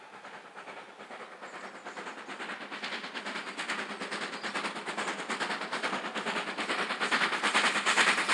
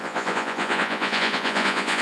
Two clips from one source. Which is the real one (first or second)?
first